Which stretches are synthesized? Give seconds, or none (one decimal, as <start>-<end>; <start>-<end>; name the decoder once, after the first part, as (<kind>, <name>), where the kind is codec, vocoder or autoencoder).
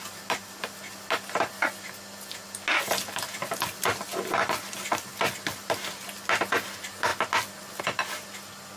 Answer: none